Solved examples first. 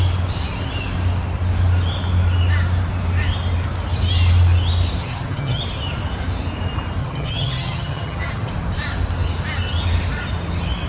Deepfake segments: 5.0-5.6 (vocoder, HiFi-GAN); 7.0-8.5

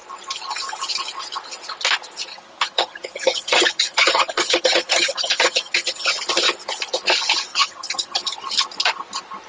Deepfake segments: 2.3-6.2 (vocoder, HiFi-GAN); 7.5-8.2

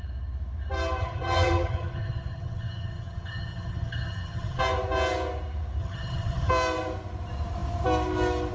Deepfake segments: 1.0-4.6 (vocoder, HiFi-GAN); 5.8-6.5

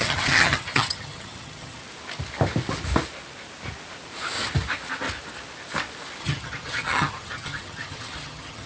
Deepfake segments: 0.0-1.8 (vocoder, HiFi-GAN); 6.2-8.7

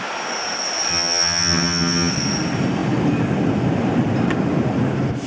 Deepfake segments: 0.9-2.1 (vocoder, HiFi-GAN)

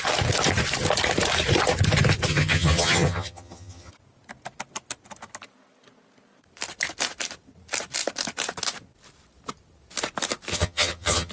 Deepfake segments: 2.3-3.9 (vocoder, HiFi-GAN); 10.5-11.3

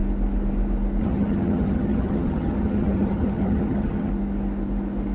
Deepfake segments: 1.0-4.1 (vocoder, HiFi-GAN)